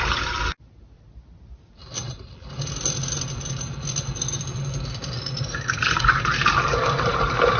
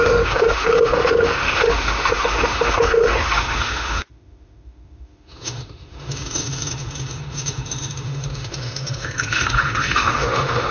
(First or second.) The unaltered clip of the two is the first